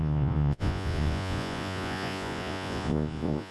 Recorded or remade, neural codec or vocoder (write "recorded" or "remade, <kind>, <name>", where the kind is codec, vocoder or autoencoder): remade, vocoder, Vocos